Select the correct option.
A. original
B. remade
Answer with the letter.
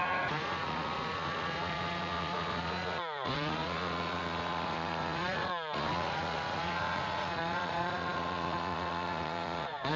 B